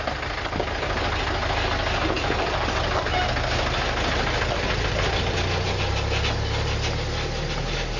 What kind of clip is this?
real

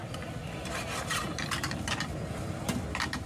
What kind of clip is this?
real